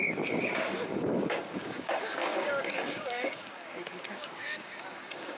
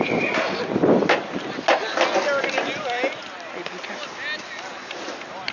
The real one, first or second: second